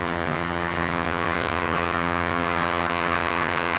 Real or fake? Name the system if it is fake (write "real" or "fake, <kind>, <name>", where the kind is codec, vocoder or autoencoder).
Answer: fake, vocoder, HiFi-GAN